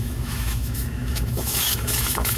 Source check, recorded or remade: remade